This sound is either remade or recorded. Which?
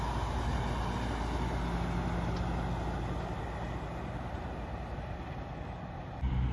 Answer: recorded